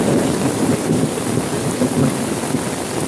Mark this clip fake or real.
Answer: real